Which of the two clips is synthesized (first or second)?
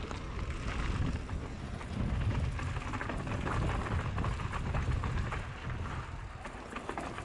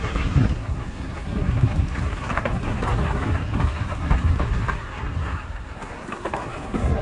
second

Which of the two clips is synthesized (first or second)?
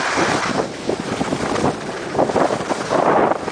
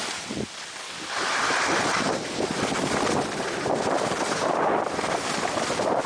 second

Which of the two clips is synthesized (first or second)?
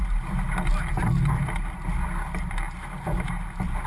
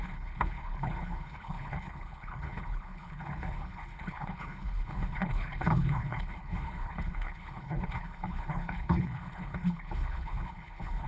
second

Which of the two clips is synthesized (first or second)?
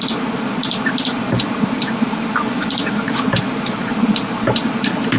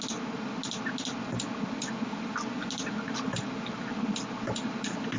first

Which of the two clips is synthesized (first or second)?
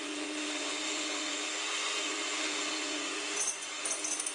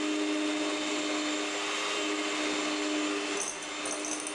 first